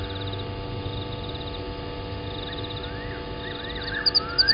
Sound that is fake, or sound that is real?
real